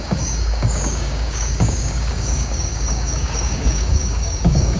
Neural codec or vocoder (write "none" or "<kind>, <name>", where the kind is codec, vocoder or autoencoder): codec, DAC